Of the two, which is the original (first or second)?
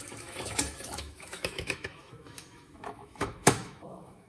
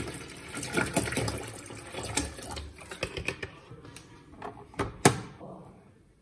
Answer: second